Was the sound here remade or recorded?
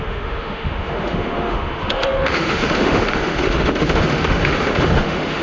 remade